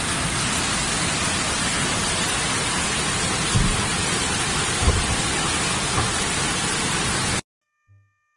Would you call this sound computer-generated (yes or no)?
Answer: no